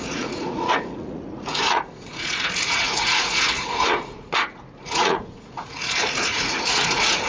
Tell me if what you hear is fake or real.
fake